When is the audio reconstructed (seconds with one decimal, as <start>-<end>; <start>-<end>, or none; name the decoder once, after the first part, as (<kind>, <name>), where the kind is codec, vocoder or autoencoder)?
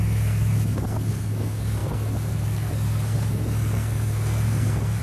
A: 0.0-5.0 (codec, SNAC)